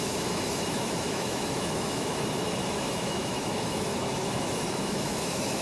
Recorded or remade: remade